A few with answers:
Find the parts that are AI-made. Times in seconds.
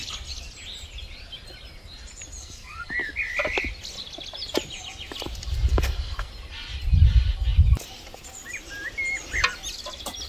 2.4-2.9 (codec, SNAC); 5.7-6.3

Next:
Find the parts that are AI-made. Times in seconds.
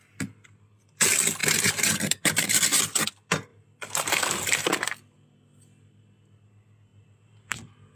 1.4-2.6 (vocoder, BigVGAN v2); 6.9-7.6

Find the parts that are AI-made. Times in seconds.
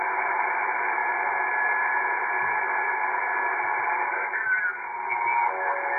none